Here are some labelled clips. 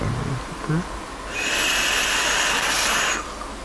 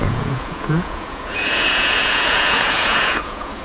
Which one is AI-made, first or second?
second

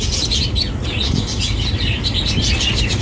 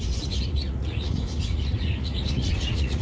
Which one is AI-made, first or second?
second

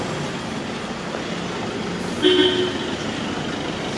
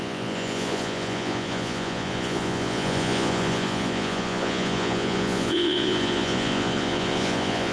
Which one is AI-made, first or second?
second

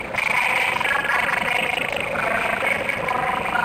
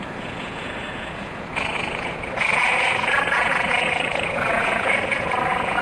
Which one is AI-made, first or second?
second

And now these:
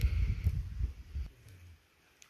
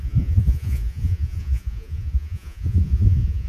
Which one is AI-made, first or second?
second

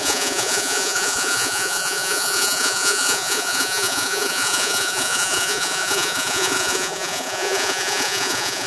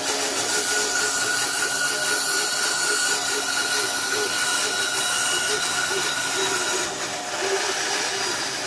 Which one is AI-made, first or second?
first